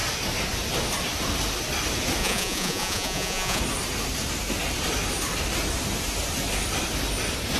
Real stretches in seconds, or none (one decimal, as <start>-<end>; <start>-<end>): 0.0-2.2; 3.6-7.6